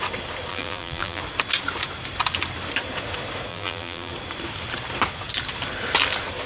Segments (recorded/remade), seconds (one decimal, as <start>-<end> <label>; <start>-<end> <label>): 0.0-0.5 recorded; 0.5-1.2 remade; 1.2-3.5 recorded; 3.5-4.1 remade; 4.1-6.5 recorded